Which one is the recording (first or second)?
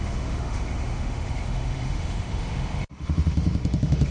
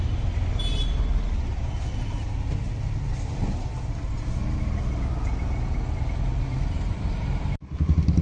second